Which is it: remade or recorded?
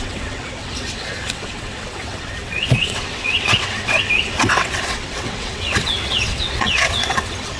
remade